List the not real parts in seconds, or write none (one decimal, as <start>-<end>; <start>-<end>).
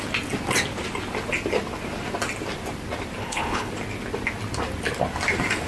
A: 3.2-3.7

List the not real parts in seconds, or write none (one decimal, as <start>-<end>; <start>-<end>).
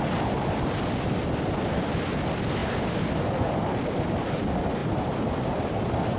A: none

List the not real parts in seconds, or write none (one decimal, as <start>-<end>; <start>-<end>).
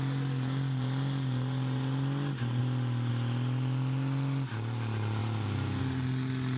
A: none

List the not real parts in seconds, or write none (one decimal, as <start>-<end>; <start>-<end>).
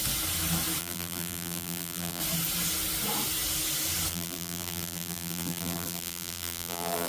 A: 0.8-2.2; 4.1-7.1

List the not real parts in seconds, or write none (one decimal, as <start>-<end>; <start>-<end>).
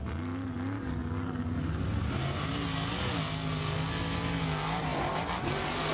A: none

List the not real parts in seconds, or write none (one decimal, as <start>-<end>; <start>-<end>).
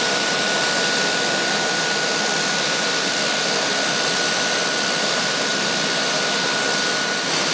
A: none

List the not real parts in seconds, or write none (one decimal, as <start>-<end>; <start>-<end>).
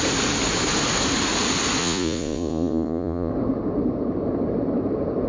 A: 1.8-3.3